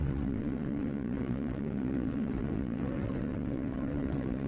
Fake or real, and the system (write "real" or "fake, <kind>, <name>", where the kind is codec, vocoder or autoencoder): fake, vocoder, WaveNeXt